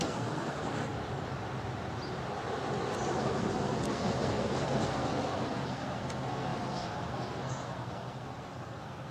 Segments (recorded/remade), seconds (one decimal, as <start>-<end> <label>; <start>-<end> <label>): 0.0-1.0 remade; 1.0-3.1 recorded; 3.1-9.1 remade